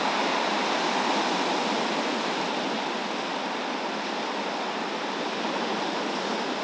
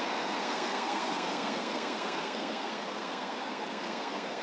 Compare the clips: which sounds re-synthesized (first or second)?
second